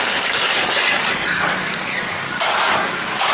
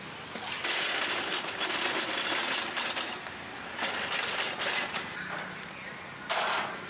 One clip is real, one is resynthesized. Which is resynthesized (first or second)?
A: first